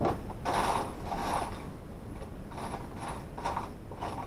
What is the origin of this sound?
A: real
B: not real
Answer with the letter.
A